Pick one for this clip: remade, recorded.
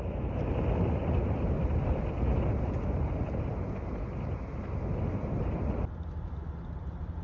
recorded